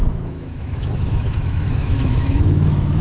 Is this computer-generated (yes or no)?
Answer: yes